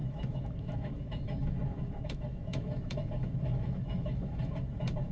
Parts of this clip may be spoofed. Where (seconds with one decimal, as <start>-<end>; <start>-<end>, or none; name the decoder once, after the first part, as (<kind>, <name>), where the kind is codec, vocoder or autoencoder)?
0.0-5.1 (autoencoder, DAC-VAE)